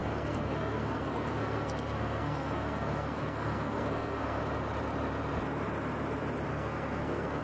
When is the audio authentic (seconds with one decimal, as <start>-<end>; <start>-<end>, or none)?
4.4-6.5